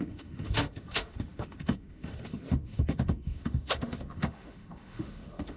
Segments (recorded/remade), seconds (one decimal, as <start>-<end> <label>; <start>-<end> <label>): 0.0-5.6 remade